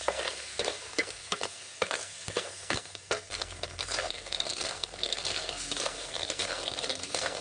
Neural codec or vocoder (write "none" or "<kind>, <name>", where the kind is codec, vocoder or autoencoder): codec, SNAC